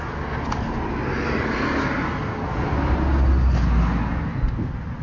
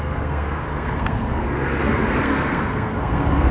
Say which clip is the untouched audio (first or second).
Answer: first